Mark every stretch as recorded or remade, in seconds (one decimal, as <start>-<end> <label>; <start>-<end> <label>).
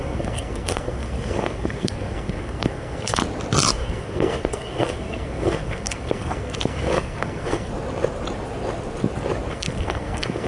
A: 0.0-3.2 remade; 3.2-3.7 recorded; 3.7-7.7 remade; 7.7-9.5 recorded; 9.5-10.5 remade